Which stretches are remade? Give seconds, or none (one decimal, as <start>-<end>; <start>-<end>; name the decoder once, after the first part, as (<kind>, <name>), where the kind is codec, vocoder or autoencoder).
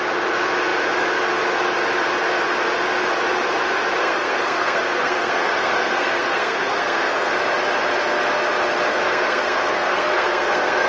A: 4.0-7.3 (codec, SNAC); 8.9-10.9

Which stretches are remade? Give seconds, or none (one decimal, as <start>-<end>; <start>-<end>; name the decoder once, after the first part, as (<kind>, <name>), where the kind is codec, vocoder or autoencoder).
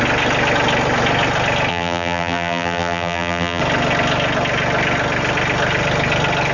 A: 1.7-3.6 (vocoder, BigVGAN v2)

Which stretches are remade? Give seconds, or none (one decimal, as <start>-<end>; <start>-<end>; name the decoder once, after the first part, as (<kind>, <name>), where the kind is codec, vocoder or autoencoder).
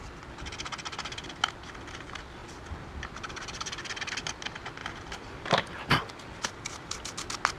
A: 2.4-4.3 (vocoder, BigVGAN v2); 4.8-6.2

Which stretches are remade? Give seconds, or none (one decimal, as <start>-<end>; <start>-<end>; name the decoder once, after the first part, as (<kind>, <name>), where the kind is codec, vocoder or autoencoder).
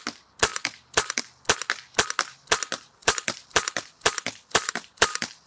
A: 0.5-1.2 (vocoder, BigVGAN v2); 3.0-5.5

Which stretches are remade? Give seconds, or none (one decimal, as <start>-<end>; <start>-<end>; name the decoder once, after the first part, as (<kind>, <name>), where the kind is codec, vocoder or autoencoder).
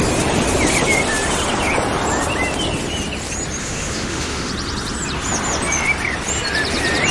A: 3.6-4.5 (autoencoder, DAC-VAE)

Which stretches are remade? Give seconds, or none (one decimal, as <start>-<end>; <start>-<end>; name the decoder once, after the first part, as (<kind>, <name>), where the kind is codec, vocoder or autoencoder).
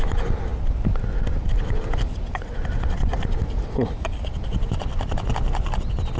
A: none